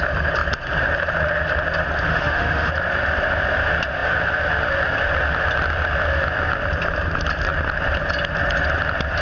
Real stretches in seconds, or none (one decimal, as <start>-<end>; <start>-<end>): 0.0-2.1; 2.7-9.2